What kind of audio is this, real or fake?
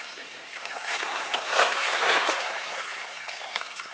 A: fake